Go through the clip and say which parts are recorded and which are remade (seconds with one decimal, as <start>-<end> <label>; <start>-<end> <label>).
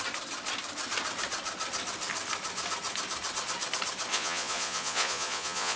0.0-4.1 recorded; 4.1-5.8 remade